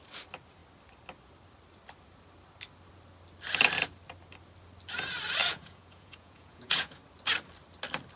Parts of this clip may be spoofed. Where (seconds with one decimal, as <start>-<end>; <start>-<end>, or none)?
5.4-7.0